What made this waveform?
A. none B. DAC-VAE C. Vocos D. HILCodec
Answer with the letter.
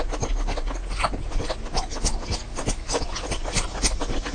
A